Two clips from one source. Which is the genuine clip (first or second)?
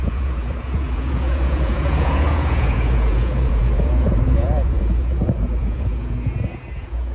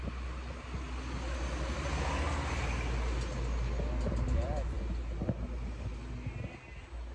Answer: second